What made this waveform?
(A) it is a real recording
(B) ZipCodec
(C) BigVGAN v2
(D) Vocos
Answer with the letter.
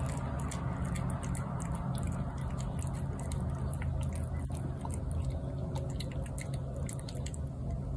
A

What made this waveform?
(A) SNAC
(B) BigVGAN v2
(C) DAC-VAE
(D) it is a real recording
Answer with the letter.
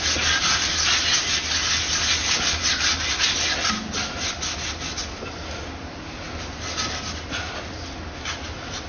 D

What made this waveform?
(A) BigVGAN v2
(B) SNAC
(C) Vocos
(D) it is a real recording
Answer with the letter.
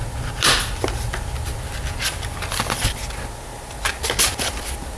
D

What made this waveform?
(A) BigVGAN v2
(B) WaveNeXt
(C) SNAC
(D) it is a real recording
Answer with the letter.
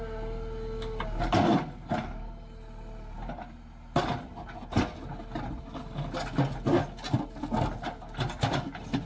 D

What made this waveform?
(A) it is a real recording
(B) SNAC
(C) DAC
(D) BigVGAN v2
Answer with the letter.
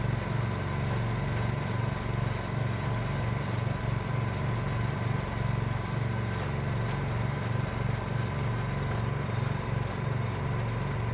A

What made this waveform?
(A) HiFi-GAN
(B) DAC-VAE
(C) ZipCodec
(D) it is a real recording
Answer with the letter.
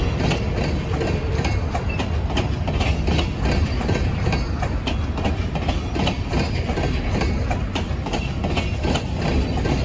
D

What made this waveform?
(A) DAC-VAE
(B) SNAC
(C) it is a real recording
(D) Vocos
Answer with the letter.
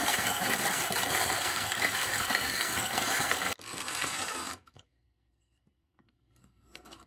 B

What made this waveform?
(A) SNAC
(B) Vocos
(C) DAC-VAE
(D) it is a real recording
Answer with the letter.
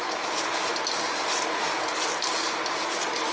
D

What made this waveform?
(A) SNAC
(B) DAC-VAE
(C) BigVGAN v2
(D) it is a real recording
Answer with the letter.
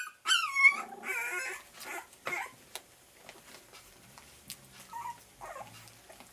D